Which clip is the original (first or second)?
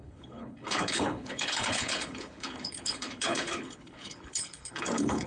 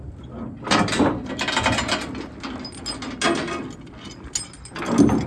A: second